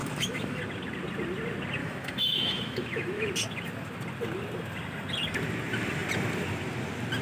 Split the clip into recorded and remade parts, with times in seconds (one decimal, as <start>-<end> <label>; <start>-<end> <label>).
0.0-0.6 remade; 0.6-1.8 recorded; 1.8-3.3 remade; 3.3-7.2 recorded